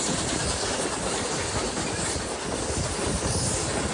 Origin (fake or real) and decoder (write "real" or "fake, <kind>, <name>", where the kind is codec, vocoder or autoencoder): real